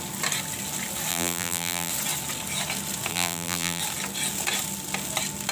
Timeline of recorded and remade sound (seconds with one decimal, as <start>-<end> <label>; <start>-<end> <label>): 0.0-1.1 recorded; 1.1-1.9 remade; 1.9-3.1 recorded; 3.1-3.8 remade; 3.8-5.5 recorded